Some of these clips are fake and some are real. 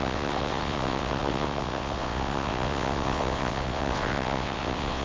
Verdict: fake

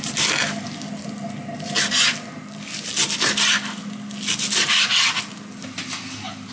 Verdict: real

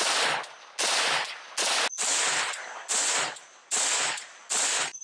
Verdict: real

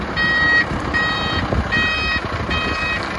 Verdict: real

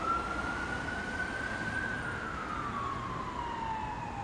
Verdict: real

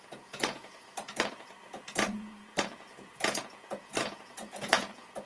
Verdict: fake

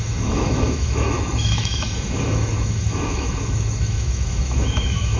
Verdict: fake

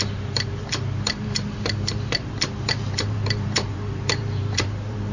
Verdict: fake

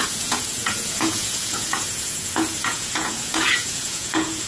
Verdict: fake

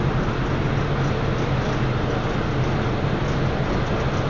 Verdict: real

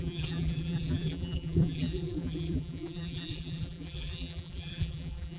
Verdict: fake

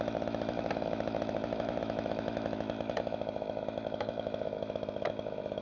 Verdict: fake